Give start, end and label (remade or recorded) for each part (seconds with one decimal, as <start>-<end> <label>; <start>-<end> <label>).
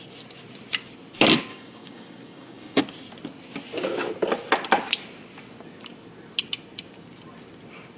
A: 0.0-1.5 recorded; 1.5-2.8 remade; 2.8-8.0 recorded